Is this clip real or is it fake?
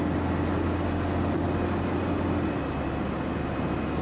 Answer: real